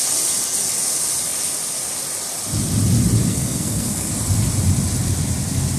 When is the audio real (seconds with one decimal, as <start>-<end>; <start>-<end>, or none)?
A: 0.0-3.3; 4.1-5.8